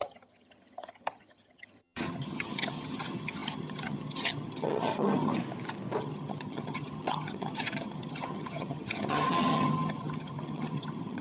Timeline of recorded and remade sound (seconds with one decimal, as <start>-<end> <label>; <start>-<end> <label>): 0.0-5.3 remade; 5.3-6.0 recorded; 6.0-11.2 remade